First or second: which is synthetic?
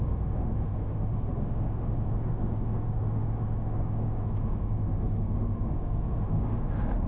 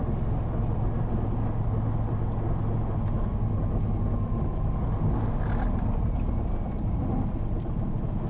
first